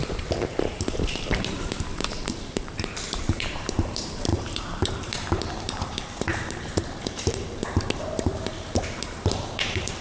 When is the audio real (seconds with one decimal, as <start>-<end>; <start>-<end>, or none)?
none